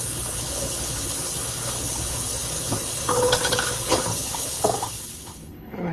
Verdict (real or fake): fake